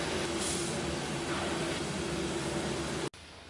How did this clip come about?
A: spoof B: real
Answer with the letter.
B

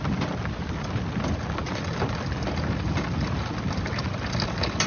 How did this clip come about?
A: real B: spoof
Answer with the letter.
A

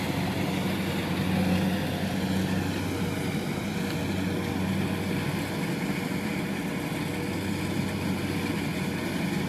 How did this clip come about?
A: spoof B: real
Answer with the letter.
B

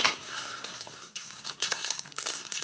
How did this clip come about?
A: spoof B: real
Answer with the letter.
A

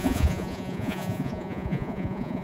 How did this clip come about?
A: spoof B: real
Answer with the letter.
A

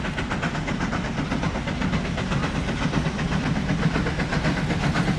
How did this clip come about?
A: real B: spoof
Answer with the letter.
A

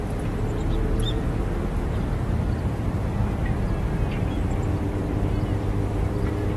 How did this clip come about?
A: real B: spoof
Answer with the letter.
A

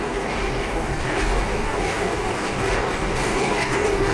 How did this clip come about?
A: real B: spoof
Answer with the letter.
B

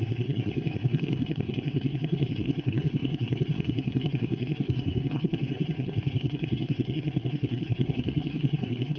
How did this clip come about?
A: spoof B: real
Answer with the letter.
A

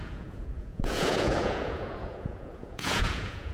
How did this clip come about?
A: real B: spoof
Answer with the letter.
B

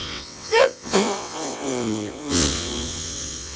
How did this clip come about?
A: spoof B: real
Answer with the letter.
A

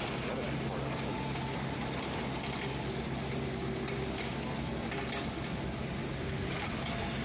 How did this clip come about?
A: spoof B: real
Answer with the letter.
B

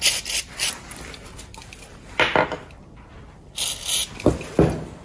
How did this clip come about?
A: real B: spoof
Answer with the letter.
A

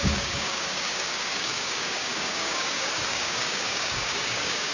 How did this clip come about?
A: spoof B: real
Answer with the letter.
A